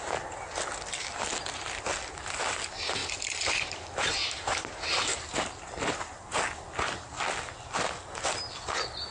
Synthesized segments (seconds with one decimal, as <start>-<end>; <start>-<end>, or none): 3.0-5.2